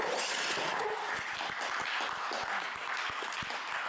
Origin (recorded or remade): recorded